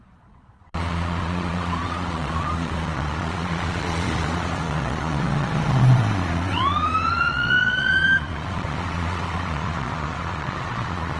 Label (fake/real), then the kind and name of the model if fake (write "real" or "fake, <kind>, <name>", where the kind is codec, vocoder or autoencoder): fake, vocoder, Vocos